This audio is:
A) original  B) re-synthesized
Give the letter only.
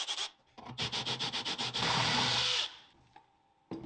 B